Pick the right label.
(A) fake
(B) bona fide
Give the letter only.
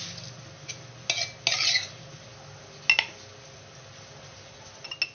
B